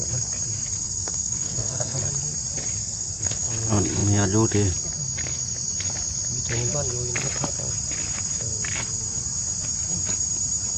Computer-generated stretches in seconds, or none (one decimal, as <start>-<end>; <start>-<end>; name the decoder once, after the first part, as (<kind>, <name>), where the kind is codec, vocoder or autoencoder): 0.8-2.0 (codec, SNAC); 2.8-3.5